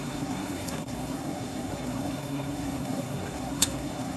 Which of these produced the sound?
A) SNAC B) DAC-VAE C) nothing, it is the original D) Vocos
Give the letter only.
A